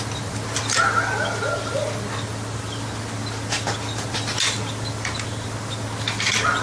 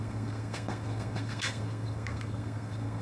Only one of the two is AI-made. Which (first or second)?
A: second